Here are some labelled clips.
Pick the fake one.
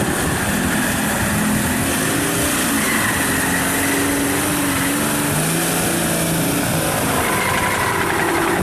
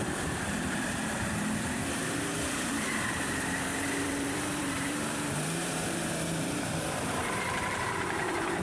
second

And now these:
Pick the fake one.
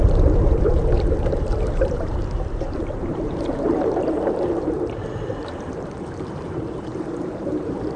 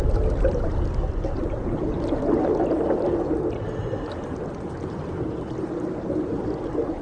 first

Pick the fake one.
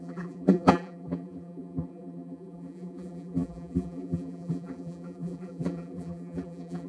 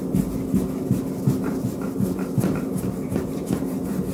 first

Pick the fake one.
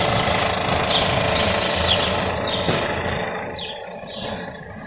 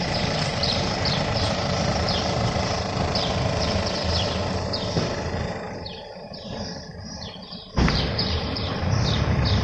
second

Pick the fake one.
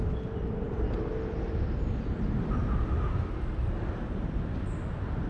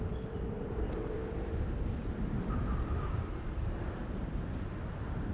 second